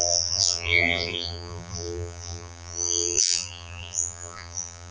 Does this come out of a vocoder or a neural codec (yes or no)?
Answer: yes